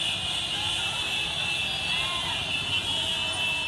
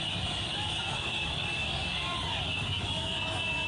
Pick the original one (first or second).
first